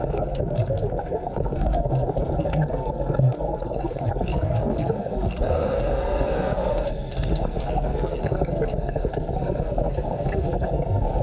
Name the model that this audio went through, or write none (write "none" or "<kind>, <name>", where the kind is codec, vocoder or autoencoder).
codec, SNAC